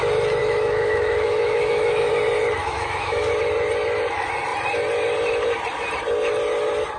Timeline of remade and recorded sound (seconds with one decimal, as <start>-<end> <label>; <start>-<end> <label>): 0.0-0.4 recorded; 0.4-2.1 remade; 2.1-2.6 recorded; 2.6-3.3 remade; 3.3-7.0 recorded